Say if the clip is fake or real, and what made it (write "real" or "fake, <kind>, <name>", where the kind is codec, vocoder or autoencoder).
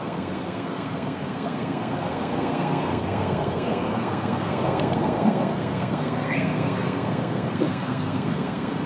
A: fake, codec, SNAC